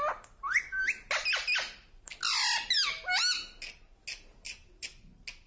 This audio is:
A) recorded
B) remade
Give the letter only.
A